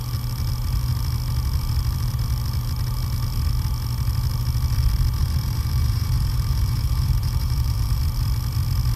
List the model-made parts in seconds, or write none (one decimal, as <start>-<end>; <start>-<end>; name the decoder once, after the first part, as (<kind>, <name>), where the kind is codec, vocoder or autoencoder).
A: 5.2-8.0 (vocoder, BigVGAN v2)